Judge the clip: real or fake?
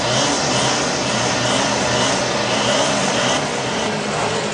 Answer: real